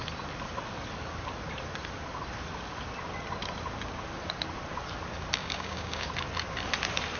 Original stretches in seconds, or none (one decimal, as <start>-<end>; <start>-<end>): 0.0-5.4; 6.1-7.2